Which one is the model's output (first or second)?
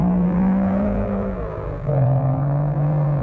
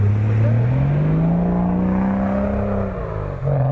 first